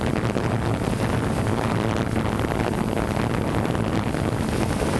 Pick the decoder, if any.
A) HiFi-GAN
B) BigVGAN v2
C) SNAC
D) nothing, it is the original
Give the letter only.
D